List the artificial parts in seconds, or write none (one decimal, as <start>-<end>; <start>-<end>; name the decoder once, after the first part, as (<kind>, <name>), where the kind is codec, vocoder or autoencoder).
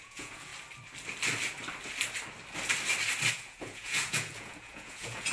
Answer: 0.0-0.5 (vocoder, Vocos); 3.3-5.3